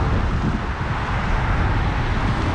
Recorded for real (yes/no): yes